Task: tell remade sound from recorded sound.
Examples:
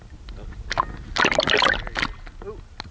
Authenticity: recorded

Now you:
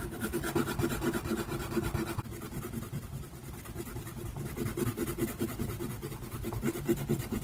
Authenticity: recorded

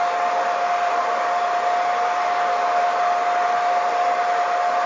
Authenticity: recorded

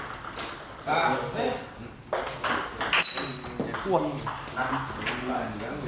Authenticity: recorded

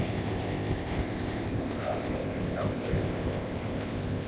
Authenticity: remade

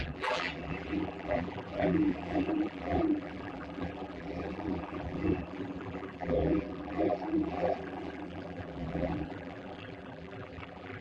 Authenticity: remade